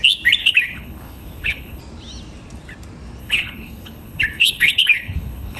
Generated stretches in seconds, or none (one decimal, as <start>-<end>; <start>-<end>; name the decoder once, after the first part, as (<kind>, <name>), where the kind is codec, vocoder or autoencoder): 0.4-1.8 (codec, HILCodec); 3.2-5.6